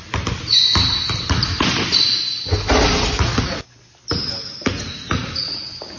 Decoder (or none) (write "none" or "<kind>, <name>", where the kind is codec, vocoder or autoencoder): none